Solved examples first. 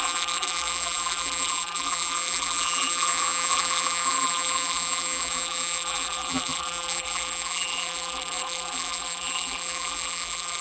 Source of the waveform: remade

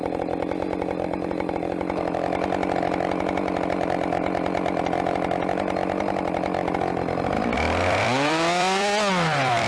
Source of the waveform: remade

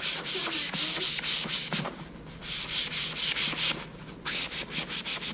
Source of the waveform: recorded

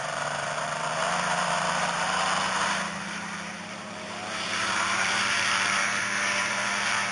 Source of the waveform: remade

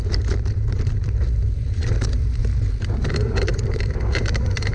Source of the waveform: remade